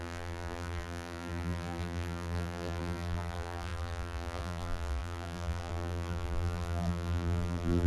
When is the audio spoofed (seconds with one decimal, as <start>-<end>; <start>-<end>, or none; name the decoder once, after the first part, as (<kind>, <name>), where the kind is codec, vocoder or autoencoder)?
0.0-7.9 (vocoder, BigVGAN v2)